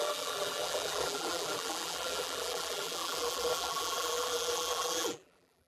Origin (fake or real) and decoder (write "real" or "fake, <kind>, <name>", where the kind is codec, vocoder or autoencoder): fake, vocoder, BigVGAN v2